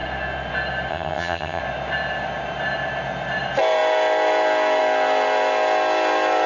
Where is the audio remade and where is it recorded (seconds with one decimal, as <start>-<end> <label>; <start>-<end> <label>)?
0.0-0.9 recorded; 0.9-1.6 remade; 1.6-6.5 recorded